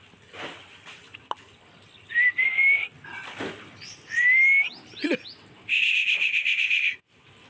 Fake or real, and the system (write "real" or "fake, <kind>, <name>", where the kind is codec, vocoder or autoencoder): real